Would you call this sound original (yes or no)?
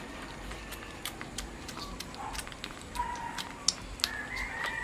yes